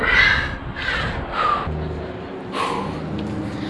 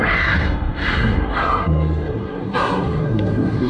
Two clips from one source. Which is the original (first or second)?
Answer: first